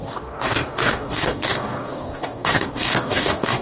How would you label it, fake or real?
fake